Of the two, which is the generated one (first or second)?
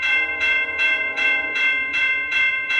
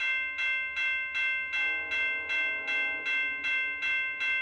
first